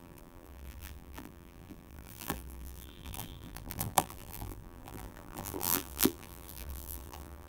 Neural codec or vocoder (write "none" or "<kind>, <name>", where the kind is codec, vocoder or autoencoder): vocoder, BigVGAN v2